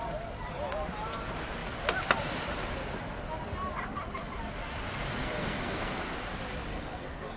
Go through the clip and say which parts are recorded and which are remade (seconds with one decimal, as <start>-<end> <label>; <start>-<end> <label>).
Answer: 0.0-5.2 recorded; 5.2-6.0 remade; 6.0-6.7 recorded; 6.7-7.4 remade